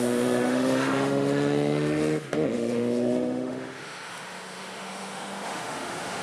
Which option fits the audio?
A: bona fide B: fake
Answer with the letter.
B